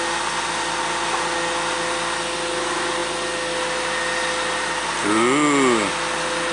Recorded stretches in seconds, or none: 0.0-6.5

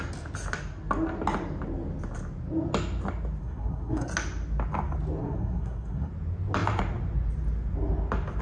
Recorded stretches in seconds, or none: 0.0-3.4; 4.1-5.2; 6.1-8.4

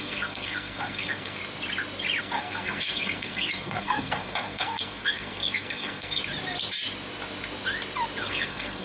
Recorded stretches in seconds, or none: 1.4-2.2; 6.2-8.2

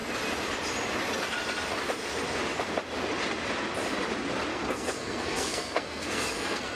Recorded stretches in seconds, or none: 0.0-4.5

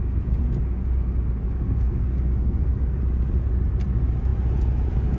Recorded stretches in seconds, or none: 0.0-1.4; 3.0-5.2

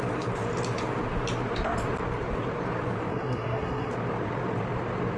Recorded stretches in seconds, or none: 0.0-3.1; 3.9-5.2

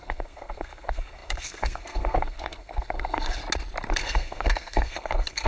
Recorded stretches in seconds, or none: 3.4-3.9